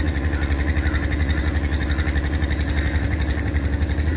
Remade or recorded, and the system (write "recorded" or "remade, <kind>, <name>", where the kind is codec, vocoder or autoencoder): remade, vocoder, Vocos